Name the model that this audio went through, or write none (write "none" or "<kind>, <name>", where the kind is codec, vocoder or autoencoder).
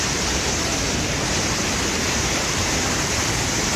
vocoder, BigVGAN v2